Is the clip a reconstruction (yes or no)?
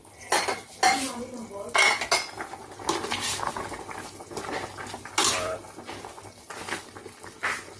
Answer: no